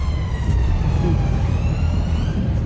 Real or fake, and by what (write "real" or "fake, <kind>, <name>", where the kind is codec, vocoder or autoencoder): real